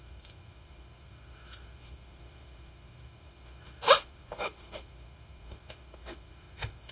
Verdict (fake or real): fake